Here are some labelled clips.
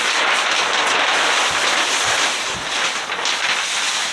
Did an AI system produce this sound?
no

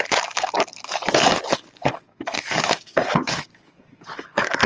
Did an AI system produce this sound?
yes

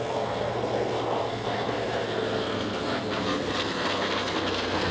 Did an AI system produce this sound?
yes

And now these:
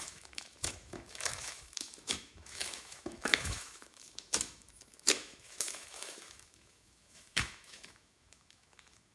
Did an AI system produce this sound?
yes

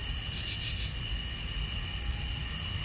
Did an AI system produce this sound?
no